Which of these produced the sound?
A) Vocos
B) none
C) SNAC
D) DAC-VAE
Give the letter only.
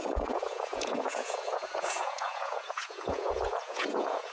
A